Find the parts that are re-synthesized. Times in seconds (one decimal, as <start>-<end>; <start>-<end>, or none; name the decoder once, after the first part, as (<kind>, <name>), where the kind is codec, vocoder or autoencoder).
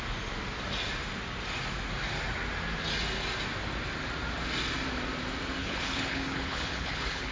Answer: 5.6-7.3 (codec, HILCodec)